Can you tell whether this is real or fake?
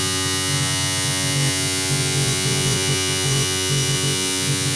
fake